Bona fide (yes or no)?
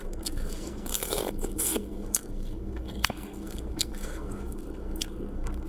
no